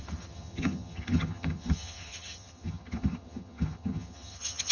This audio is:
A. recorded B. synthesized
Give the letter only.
B